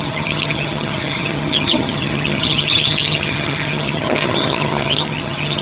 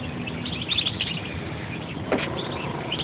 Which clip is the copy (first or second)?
first